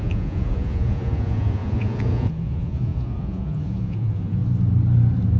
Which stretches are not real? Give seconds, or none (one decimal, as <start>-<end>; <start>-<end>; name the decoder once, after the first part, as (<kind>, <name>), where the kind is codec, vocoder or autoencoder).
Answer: 0.0-4.4 (vocoder, Vocos)